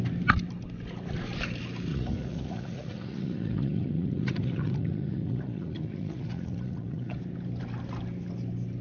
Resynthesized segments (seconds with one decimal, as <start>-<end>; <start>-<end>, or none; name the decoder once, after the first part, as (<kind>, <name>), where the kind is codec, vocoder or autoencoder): 1.9-7.2 (vocoder, Vocos)